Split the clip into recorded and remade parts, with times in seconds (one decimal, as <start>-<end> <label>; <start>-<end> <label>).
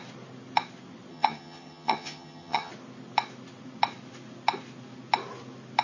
0.0-1.1 recorded; 1.1-2.7 remade; 2.7-5.8 recorded